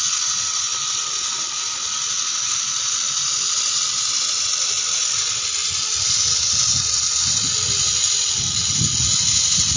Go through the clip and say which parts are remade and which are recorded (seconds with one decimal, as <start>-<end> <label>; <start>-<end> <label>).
0.0-9.8 recorded